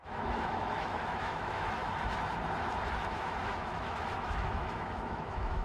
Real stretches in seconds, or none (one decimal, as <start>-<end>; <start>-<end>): 1.8-3.1